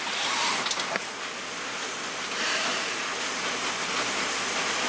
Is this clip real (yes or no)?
yes